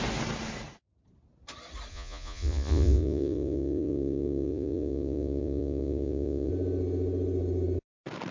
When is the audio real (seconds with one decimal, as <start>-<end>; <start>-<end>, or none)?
0.0-1.9; 6.5-8.3